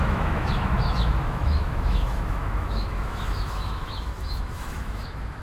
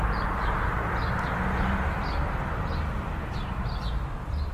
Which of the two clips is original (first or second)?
second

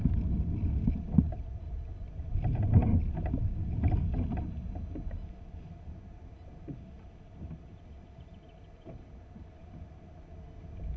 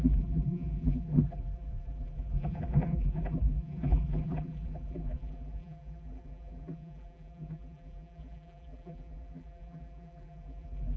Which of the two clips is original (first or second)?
first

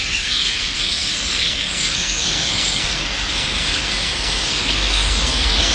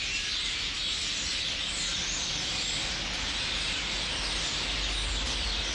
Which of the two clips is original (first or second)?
second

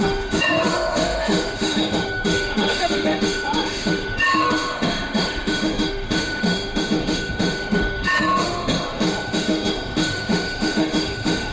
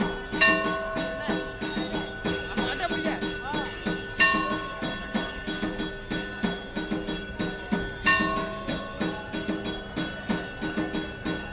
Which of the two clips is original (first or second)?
second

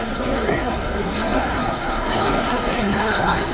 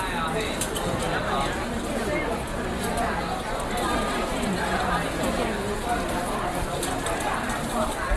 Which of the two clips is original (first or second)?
second